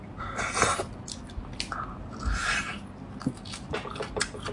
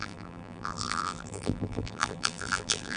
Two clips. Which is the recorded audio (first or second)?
first